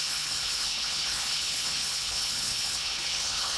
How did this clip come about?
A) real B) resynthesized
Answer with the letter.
B